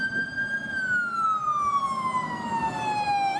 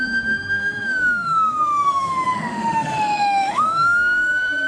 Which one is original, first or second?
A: first